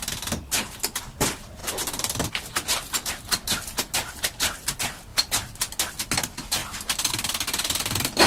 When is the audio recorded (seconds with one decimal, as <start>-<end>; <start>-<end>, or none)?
0.0-6.6; 7.1-8.3